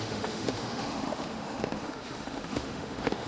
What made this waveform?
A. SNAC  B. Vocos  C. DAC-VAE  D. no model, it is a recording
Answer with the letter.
C